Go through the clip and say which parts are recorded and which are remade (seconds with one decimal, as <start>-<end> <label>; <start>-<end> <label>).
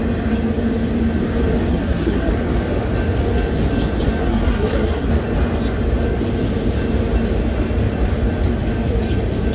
0.0-1.7 recorded; 1.7-2.3 remade; 2.3-4.2 recorded; 4.2-5.1 remade; 5.1-9.5 recorded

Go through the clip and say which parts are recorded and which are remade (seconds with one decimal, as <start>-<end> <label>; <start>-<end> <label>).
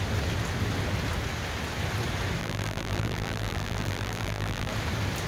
0.0-2.4 recorded; 2.4-4.7 remade; 4.7-5.3 recorded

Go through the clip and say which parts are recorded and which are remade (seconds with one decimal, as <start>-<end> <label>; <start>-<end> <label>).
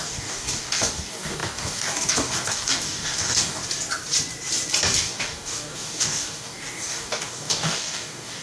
0.0-3.6 remade; 3.6-5.0 recorded; 5.0-8.4 remade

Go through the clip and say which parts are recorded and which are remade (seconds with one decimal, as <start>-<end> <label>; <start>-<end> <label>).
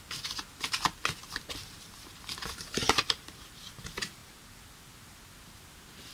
0.0-1.2 recorded; 1.2-3.8 remade; 3.8-6.1 recorded